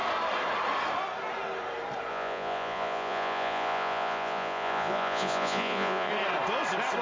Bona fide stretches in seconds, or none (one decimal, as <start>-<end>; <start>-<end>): 0.0-2.1; 6.1-7.0